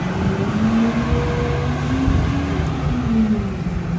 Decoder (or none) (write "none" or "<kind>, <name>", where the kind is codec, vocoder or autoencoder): none